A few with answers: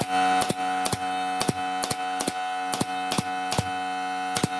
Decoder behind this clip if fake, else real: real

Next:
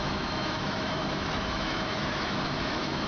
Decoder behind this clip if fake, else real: fake, autoencoder, DAC-VAE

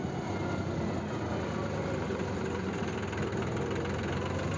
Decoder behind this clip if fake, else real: real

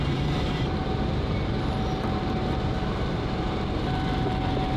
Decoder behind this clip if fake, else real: fake, vocoder, BigVGAN v2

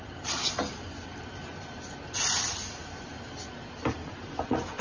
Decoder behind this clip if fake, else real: real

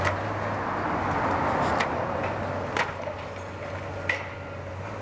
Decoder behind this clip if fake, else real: real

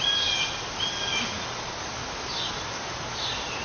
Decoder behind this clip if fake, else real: real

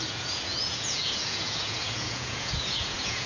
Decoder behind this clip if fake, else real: fake, vocoder, Vocos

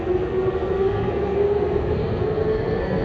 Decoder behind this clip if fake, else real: fake, codec, SNAC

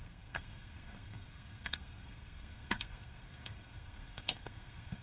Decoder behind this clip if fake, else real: fake, codec, SNAC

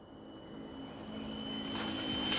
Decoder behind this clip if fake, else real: real